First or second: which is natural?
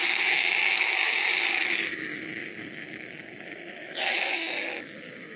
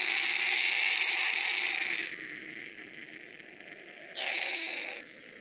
second